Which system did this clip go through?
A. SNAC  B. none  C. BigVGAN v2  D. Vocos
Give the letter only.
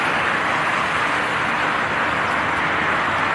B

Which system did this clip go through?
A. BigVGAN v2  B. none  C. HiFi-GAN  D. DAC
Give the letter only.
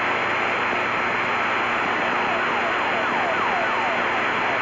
B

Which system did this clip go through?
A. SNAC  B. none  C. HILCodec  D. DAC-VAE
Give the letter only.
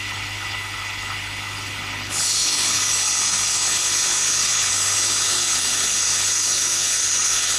C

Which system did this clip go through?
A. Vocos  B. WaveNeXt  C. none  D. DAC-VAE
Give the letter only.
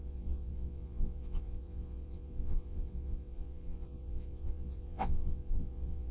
B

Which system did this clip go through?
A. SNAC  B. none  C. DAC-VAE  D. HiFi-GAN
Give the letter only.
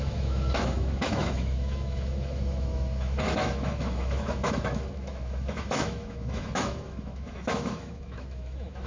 C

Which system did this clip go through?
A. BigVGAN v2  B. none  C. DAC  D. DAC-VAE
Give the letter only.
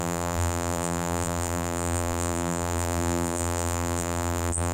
A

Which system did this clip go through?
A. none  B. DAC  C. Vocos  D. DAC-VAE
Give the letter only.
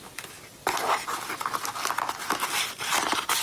A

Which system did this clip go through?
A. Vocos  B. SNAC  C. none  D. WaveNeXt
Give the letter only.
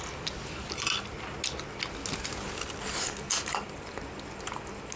C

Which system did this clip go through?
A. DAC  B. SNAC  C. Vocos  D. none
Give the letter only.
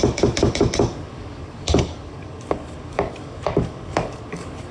A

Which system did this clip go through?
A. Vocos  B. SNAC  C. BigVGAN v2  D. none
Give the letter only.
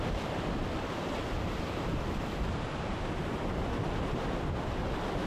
D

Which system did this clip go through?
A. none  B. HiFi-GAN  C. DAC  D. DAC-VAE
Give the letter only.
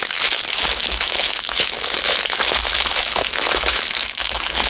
D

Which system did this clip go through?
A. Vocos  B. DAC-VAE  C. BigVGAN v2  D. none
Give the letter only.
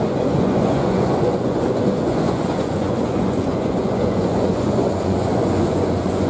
A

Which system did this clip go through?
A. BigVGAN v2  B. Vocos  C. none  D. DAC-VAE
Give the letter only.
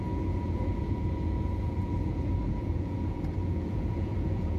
B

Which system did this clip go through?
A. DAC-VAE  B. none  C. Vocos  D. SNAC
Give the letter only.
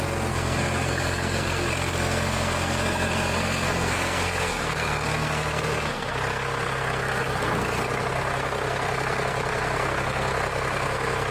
D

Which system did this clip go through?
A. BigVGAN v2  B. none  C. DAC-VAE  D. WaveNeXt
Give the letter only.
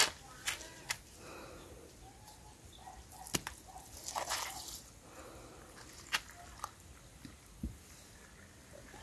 B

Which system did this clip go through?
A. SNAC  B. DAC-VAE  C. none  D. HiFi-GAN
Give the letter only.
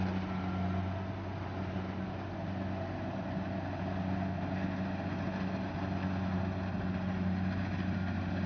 C